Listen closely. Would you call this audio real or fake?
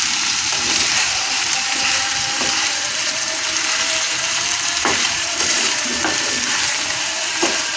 fake